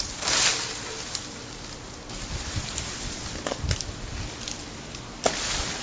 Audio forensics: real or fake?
real